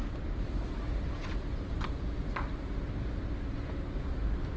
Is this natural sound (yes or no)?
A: yes